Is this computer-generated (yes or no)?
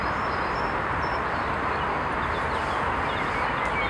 no